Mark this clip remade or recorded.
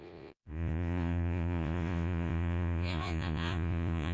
remade